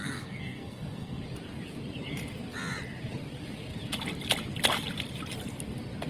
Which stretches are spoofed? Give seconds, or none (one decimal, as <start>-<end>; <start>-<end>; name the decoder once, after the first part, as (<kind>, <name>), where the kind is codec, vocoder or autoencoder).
0.0-1.2 (codec, SNAC)